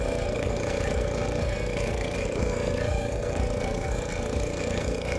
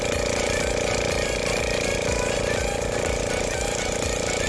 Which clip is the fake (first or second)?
first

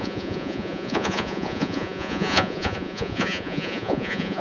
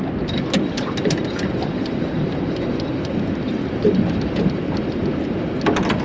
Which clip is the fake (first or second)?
first